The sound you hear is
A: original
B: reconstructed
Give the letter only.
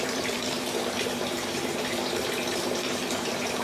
B